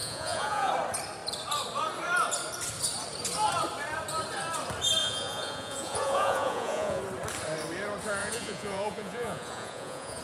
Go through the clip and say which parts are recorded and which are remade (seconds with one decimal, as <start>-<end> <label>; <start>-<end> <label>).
0.0-0.7 remade; 0.7-5.0 recorded; 5.0-7.0 remade; 7.0-8.2 recorded; 8.2-10.2 remade